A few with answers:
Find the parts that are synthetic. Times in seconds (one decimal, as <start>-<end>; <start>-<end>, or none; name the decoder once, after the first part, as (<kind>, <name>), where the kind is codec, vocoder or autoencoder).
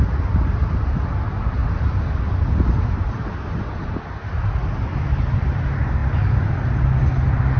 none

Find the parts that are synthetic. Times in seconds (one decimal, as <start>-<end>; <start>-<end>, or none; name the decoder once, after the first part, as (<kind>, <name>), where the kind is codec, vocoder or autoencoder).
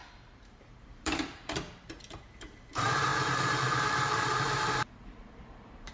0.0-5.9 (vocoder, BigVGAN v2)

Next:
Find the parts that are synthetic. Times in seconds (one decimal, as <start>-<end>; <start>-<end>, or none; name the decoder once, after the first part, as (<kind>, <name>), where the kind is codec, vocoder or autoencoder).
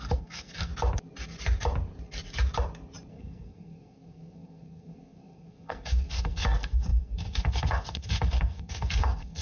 0.0-0.7 (codec, SNAC); 3.1-9.4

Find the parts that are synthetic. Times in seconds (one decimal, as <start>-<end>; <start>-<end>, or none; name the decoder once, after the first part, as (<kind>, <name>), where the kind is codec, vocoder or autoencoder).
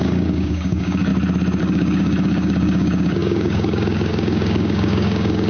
0.0-1.1 (codec, DAC); 1.6-5.5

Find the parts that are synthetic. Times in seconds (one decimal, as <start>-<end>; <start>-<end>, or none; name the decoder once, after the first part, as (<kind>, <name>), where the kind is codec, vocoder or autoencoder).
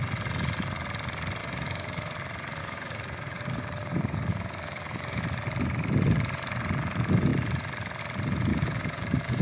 1.4-2.2 (codec, DAC); 2.6-5.2; 8.5-9.4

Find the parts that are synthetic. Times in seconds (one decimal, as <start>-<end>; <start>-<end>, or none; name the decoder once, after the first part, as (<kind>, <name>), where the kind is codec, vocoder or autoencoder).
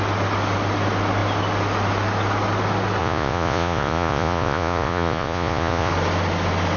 3.0-5.9 (vocoder, Vocos)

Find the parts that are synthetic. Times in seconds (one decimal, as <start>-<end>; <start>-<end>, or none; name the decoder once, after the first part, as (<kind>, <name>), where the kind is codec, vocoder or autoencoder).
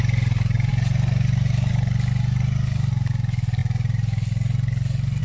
none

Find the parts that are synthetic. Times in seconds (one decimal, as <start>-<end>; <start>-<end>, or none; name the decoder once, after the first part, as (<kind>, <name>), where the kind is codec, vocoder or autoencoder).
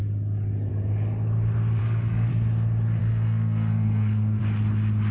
1.8-2.3 (codec, SNAC); 3.0-4.4